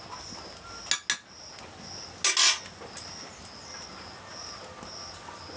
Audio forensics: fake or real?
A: real